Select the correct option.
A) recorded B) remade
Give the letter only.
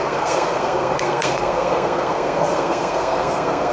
B